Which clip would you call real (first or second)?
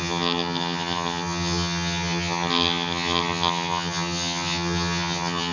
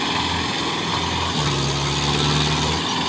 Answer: second